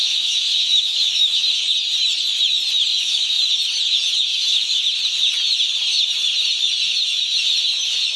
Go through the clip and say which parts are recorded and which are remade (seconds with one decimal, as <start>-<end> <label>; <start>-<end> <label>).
0.0-1.6 remade; 1.6-2.9 recorded; 2.9-3.5 remade; 3.5-4.3 recorded; 4.3-4.8 remade; 4.8-8.2 recorded